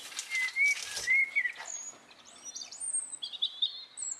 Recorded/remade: recorded